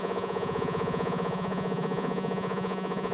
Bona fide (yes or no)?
no